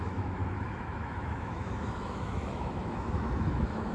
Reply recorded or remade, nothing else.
remade